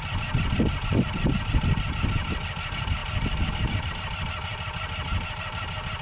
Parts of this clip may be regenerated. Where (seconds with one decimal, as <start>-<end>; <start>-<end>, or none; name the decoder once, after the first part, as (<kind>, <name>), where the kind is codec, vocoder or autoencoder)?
none